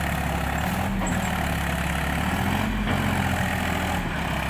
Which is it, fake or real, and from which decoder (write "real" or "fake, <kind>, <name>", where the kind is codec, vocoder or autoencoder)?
real